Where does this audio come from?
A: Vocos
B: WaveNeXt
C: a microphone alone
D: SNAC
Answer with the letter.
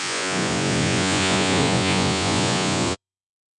A